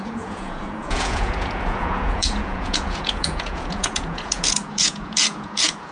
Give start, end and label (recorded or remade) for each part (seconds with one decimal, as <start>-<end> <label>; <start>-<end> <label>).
0.0-5.9 remade